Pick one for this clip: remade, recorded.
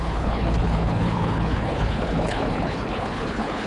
remade